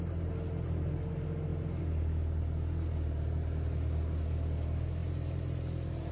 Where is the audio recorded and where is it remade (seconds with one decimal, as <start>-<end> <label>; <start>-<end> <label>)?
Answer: 0.0-6.1 recorded